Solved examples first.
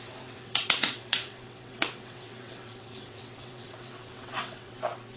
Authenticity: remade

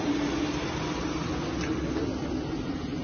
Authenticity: recorded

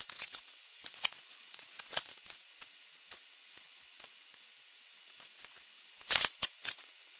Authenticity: remade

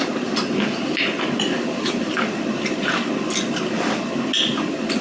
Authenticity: recorded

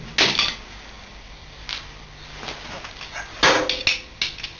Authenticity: recorded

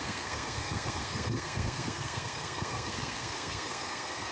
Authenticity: remade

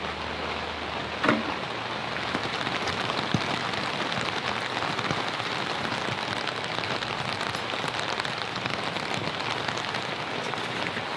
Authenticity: recorded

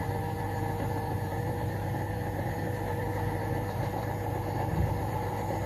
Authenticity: remade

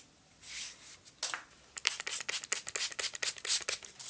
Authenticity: recorded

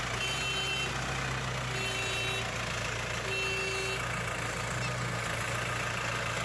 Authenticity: recorded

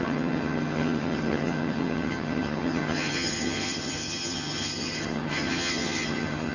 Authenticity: remade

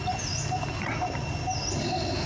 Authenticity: recorded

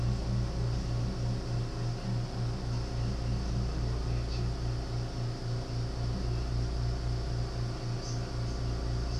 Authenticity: recorded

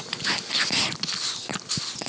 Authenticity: recorded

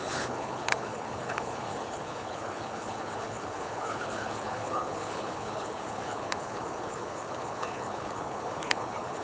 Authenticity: remade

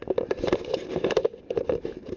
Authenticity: recorded